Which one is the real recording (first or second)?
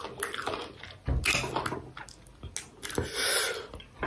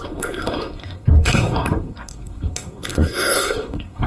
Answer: first